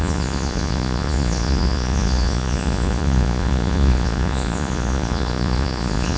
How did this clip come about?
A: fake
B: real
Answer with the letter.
A